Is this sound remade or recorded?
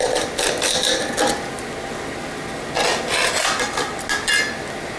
recorded